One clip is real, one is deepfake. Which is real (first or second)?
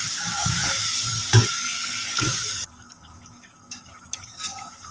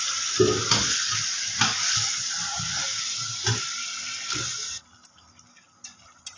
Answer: second